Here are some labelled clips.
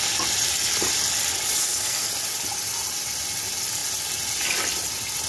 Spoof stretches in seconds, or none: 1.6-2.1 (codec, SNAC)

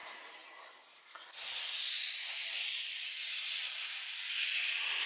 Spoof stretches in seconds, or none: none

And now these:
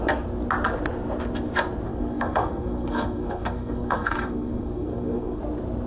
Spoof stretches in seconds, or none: 1.9-5.4 (codec, SNAC)

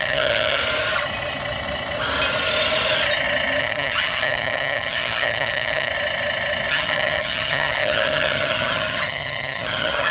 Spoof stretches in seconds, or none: 0.0-0.6 (vocoder, HiFi-GAN); 3.6-5.9; 6.7-10.1

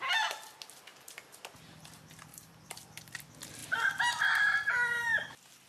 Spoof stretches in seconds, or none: 2.3-3.0 (vocoder, BigVGAN v2)

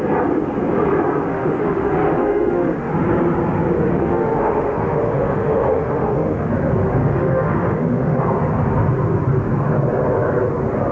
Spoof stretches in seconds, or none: 1.3-2.9 (autoencoder, DAC-VAE); 3.9-6.5; 7.0-8.2